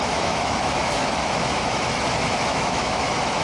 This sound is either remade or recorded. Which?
remade